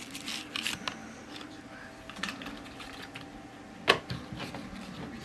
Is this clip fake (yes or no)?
no